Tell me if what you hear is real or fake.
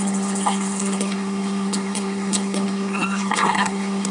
fake